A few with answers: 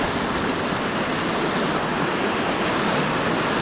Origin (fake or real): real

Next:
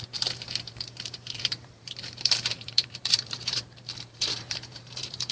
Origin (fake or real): fake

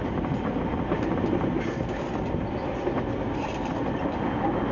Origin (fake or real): real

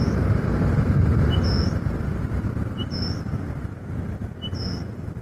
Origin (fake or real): real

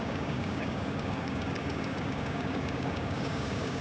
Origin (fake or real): fake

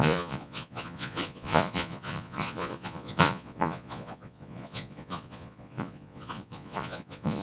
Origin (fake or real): fake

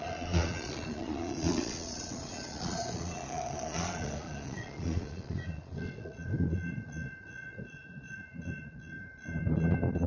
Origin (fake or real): fake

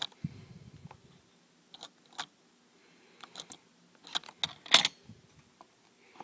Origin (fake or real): real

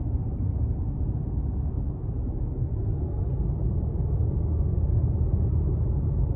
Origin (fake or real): real